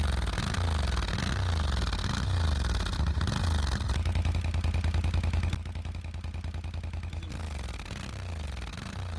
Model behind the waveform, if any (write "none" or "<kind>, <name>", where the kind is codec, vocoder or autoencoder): none